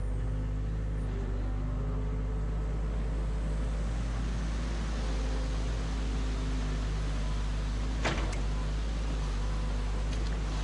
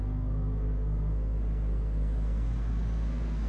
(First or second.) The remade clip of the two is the second